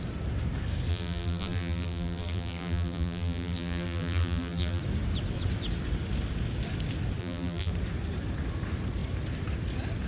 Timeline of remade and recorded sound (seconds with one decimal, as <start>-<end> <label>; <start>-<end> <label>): 0.0-0.9 recorded; 0.9-4.8 remade; 4.8-7.2 recorded; 7.2-7.7 remade; 7.7-10.1 recorded